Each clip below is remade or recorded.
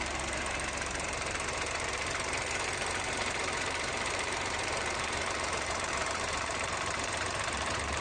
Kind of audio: remade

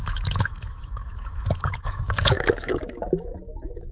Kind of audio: remade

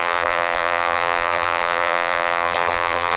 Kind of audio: remade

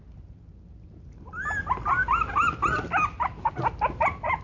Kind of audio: recorded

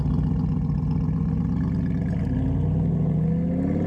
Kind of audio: recorded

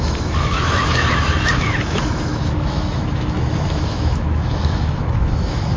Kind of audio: remade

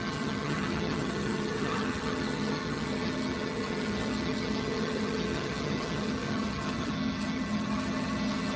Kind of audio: remade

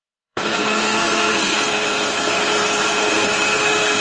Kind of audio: remade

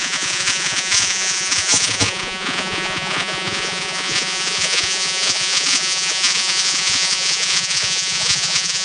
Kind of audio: remade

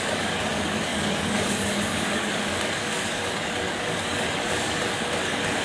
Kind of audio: remade